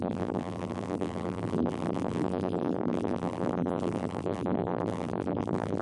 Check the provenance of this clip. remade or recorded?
remade